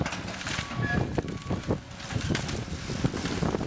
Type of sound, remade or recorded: recorded